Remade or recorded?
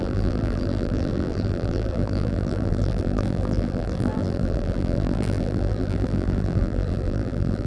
remade